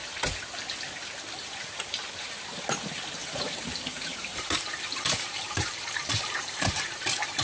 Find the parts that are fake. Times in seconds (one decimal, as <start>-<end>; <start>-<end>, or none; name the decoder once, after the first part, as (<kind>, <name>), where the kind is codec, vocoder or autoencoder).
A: 3.2-6.9 (vocoder, BigVGAN v2)